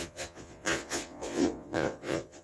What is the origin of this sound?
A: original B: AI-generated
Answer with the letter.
B